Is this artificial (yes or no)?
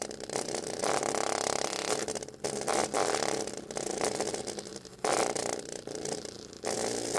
yes